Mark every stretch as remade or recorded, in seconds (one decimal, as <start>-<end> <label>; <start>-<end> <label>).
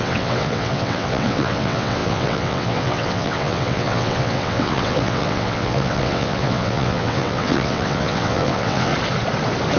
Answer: 0.0-8.9 remade; 8.9-9.8 recorded